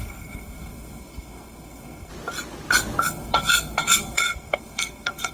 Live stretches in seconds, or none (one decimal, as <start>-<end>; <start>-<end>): 2.1-3.0